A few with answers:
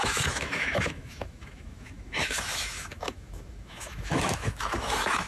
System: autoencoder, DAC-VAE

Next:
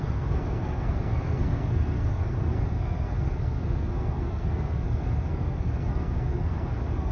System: codec, SNAC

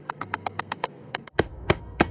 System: codec, SNAC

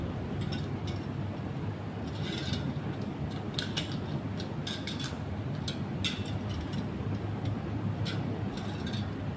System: none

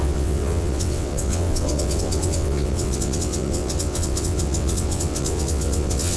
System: vocoder, WaveNeXt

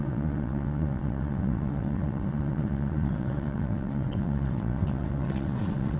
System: vocoder, WaveNeXt